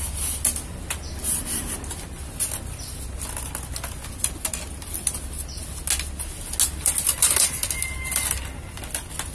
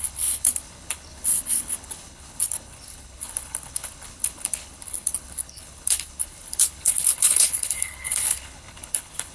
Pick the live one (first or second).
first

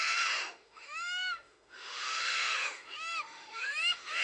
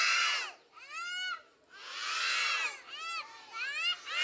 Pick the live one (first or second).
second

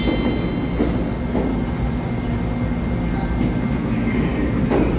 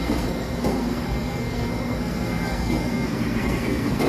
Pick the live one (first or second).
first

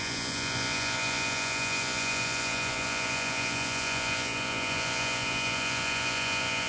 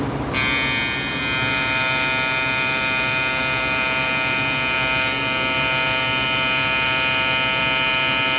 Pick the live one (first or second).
second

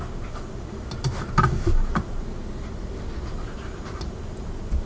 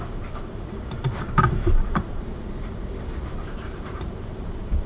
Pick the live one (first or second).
first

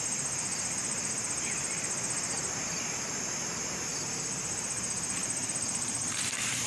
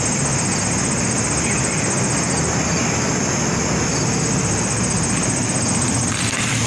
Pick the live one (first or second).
second